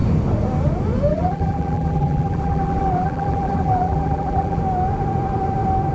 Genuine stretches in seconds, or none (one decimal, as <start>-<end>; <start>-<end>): 0.0-1.1; 4.6-5.9